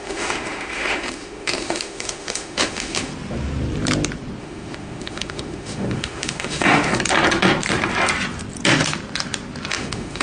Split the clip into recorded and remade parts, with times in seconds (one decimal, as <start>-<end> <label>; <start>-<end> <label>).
0.0-3.1 remade; 3.1-4.4 recorded; 4.4-6.9 remade; 6.9-9.7 recorded; 9.7-10.2 remade